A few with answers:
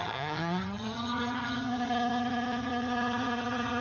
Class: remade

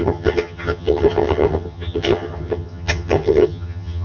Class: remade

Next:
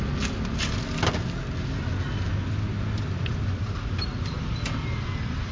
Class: recorded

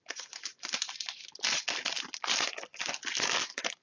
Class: recorded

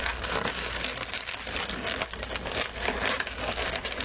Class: recorded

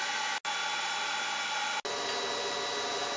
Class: recorded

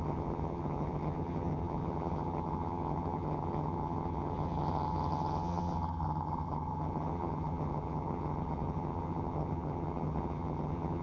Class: remade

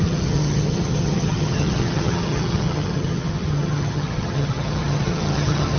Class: remade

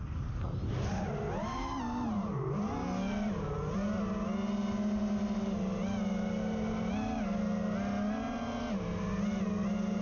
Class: recorded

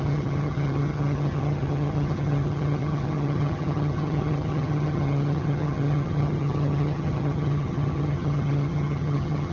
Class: remade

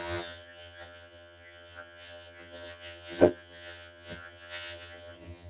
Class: remade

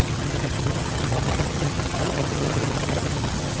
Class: remade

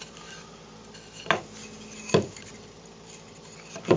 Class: recorded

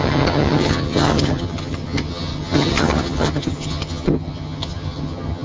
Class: remade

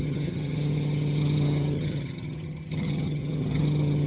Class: remade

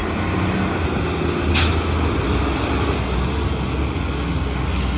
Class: recorded